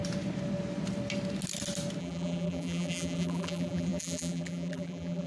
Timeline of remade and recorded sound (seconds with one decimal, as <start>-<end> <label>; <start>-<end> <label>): 0.0-2.0 recorded; 2.0-5.3 remade